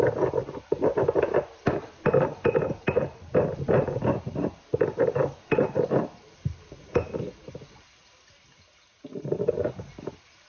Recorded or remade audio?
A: recorded